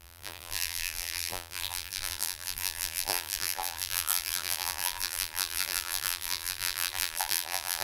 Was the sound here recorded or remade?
remade